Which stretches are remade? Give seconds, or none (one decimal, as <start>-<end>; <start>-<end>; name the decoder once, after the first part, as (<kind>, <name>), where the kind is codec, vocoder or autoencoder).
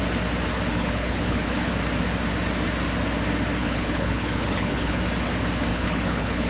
0.7-1.7 (codec, HILCodec); 3.6-5.0; 5.7-6.5